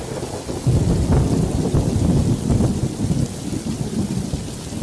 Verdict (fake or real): fake